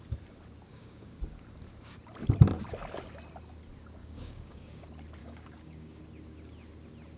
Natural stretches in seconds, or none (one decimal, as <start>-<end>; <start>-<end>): 0.0-0.7; 1.2-4.0; 4.8-5.2; 6.0-7.2

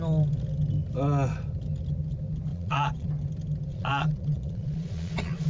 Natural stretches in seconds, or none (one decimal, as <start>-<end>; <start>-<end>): 0.0-2.5; 3.1-3.7

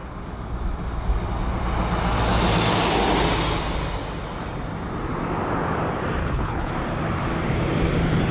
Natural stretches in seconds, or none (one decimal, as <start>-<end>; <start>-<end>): 0.0-6.2; 6.7-8.3

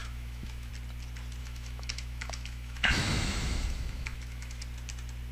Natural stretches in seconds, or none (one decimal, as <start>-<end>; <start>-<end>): 0.7-1.4; 4.6-5.3

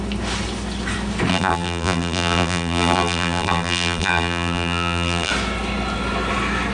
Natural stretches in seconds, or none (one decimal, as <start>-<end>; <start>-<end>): 0.0-1.3; 5.3-6.7

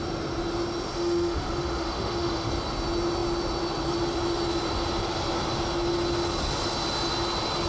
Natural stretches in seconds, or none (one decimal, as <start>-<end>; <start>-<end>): 0.0-0.9; 2.5-7.7